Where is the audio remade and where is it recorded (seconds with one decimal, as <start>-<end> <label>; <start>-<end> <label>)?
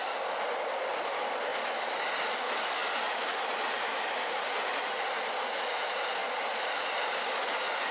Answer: 0.0-1.5 recorded; 1.5-2.0 remade; 2.0-6.2 recorded; 6.2-6.9 remade; 6.9-7.9 recorded